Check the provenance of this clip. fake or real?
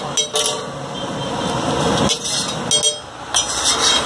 real